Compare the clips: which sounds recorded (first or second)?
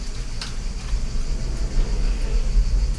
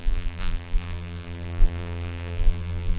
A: first